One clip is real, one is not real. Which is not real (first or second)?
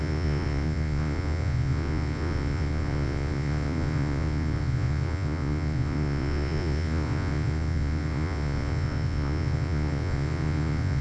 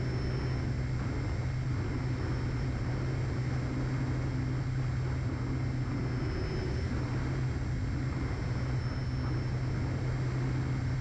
first